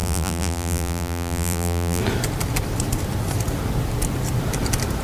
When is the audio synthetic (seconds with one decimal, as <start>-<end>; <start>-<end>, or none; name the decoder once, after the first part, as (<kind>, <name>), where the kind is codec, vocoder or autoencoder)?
0.0-2.0 (vocoder, BigVGAN v2)